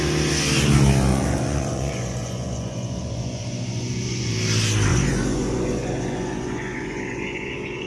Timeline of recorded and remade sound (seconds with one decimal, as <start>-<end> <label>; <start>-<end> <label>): 0.0-1.1 recorded; 1.1-4.3 remade; 4.3-4.9 recorded; 4.9-7.9 remade